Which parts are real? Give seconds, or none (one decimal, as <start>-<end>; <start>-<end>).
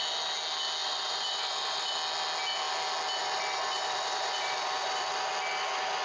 0.0-0.8; 1.9-3.2; 5.3-6.0